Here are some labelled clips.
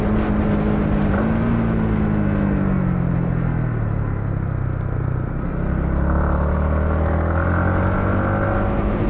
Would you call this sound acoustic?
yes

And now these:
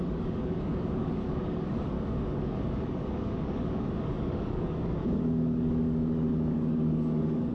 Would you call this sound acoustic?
no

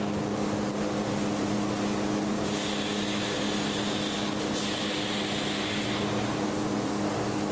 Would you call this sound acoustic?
yes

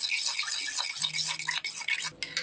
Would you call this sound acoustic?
yes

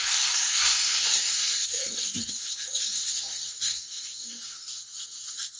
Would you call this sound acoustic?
no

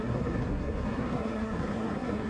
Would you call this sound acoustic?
no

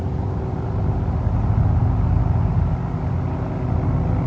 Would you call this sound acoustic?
yes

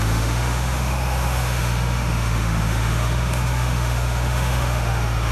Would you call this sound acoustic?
no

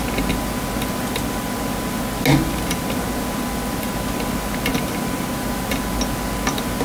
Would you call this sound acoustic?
yes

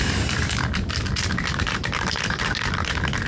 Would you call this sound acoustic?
yes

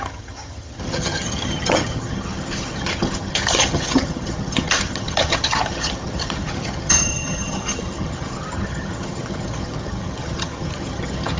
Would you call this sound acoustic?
no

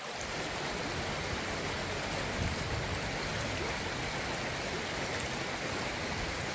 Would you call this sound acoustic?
yes